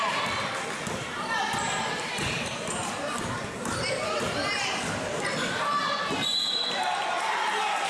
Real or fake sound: fake